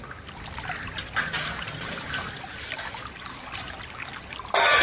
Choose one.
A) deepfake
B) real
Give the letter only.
B